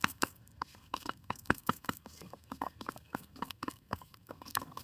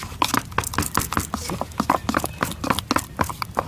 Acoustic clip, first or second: second